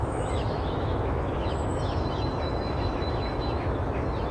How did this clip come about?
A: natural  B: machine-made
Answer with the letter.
B